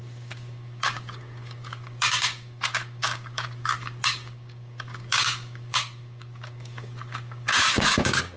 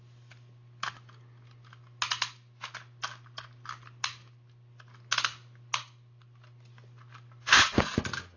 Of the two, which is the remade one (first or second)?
first